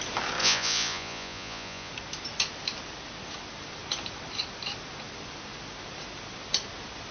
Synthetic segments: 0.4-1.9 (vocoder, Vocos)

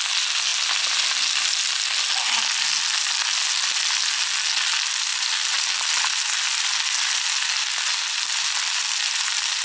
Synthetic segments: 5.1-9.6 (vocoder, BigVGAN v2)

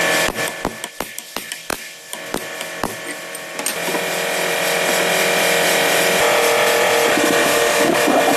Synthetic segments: 7.4-8.0 (codec, DAC)